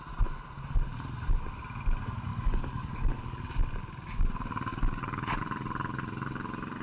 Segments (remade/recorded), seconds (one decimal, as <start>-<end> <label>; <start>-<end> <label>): 0.0-2.3 recorded; 2.3-3.4 remade; 3.4-4.7 recorded; 4.7-5.4 remade; 5.4-6.8 recorded